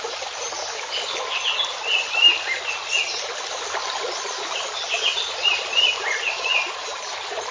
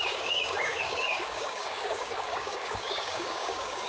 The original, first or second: first